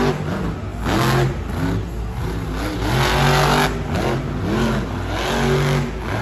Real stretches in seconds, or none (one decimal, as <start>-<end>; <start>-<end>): 0.0-6.2